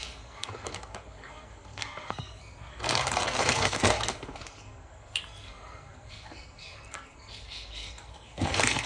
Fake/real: fake